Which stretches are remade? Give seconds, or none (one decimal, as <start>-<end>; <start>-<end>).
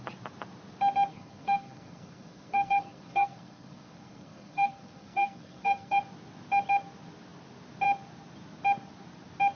1.1-6.0